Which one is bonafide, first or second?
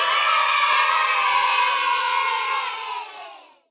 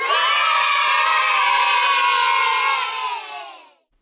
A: second